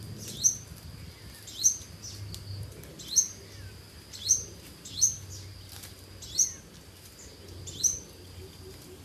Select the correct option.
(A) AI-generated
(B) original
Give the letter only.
B